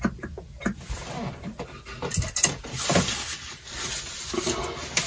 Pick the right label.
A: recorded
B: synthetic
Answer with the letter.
A